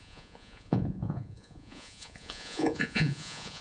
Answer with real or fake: fake